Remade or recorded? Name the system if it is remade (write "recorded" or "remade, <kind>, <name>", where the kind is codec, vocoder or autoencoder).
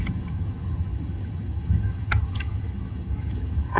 remade, vocoder, HiFi-GAN